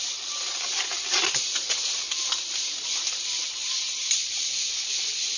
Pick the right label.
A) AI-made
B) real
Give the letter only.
B